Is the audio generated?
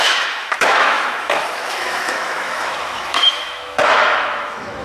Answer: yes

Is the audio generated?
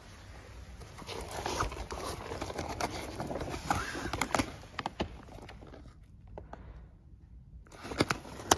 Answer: no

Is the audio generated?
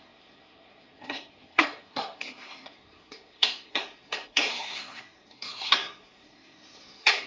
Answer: yes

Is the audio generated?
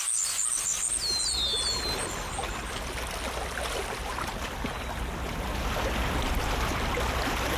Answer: no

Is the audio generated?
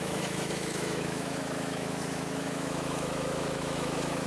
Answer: yes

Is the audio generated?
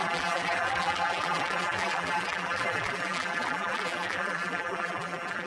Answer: yes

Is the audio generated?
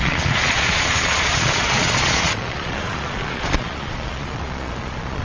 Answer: yes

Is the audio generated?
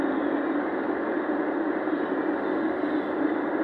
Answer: no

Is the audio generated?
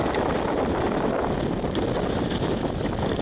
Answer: no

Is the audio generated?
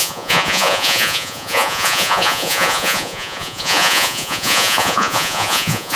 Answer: yes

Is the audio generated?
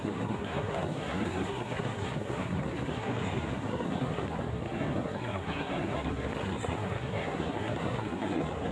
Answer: yes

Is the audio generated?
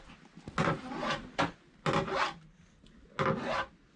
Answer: no